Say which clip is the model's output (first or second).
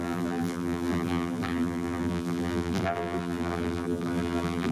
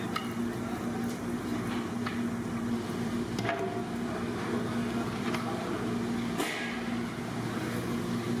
first